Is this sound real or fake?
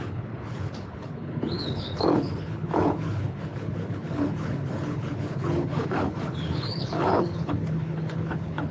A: fake